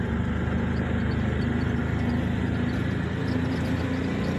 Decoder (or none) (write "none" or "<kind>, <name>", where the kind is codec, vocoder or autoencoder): none